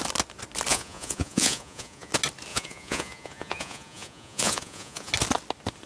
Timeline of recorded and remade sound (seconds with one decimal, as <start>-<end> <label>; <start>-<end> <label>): 0.0-0.7 recorded; 0.7-2.1 remade; 2.1-2.5 recorded; 2.5-5.1 remade; 5.1-5.9 recorded